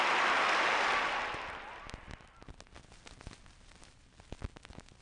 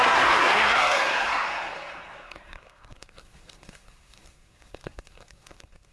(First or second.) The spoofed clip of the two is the second